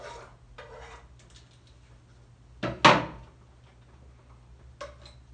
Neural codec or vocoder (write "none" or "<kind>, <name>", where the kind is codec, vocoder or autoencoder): none